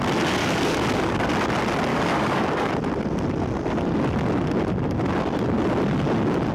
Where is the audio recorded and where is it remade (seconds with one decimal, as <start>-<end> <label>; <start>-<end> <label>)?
0.0-0.4 recorded; 0.4-1.3 remade; 1.3-1.9 recorded; 1.9-2.7 remade; 2.7-6.5 recorded